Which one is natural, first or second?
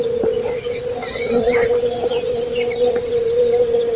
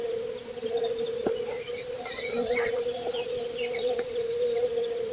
first